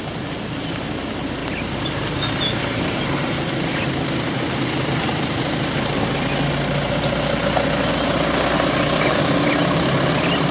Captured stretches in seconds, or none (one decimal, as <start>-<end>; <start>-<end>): 0.0-10.5